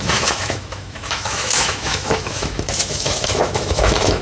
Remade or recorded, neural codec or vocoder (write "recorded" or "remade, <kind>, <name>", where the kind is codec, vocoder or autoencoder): remade, autoencoder, DAC-VAE